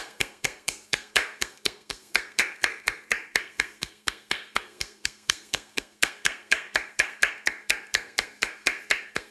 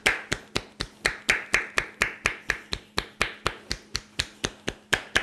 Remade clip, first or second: first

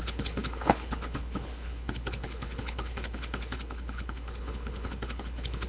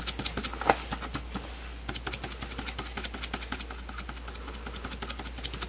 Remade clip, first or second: first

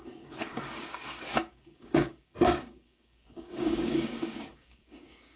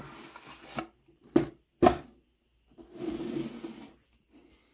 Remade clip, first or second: first